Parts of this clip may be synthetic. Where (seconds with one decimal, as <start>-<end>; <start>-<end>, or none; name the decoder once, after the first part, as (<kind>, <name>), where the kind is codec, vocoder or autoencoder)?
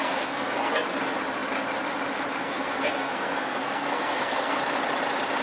0.0-0.7 (codec, SNAC); 2.4-4.6